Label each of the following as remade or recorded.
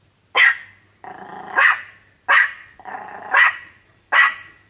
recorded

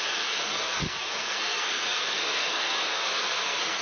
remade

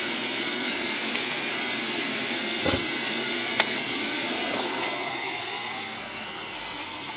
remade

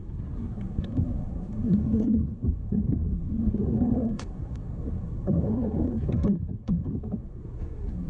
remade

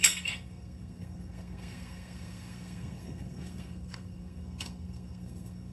remade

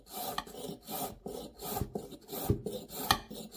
recorded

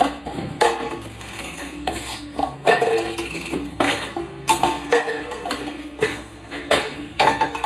remade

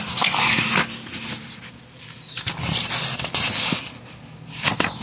recorded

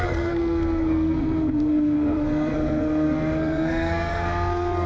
remade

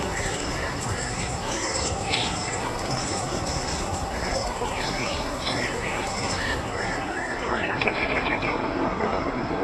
remade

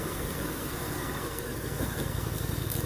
remade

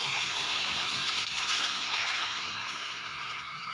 remade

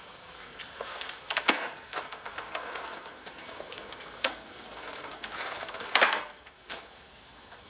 remade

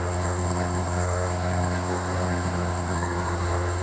remade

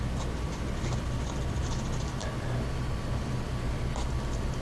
recorded